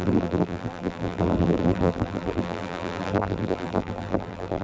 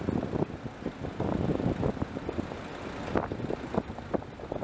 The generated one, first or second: first